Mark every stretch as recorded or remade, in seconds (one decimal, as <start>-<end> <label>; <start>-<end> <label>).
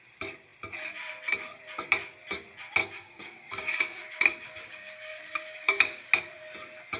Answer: 0.0-2.8 recorded; 2.8-6.1 remade; 6.1-7.0 recorded